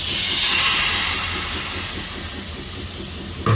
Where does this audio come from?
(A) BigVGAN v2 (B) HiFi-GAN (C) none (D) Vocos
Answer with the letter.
C